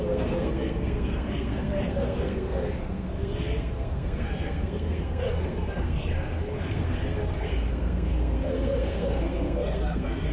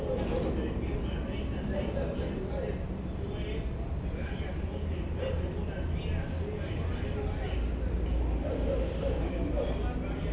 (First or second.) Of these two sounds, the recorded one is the second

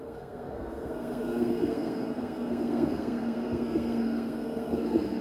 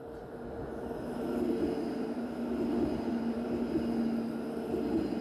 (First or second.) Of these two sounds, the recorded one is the second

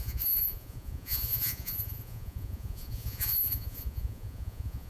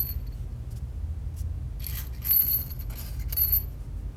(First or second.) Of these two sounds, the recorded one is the second